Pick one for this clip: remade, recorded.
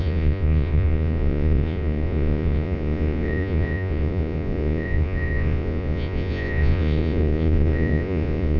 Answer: remade